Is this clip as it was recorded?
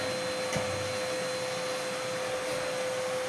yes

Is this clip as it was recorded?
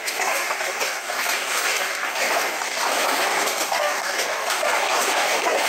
no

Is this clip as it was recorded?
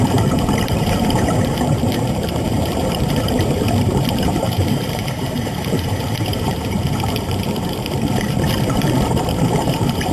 no